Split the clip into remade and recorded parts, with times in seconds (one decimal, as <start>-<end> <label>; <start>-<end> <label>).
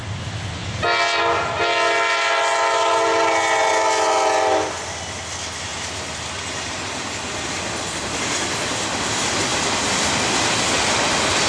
0.0-11.5 recorded